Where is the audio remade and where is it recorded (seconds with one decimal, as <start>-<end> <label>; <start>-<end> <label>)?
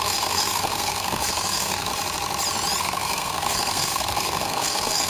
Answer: 0.0-1.9 remade; 1.9-2.8 recorded; 2.8-5.1 remade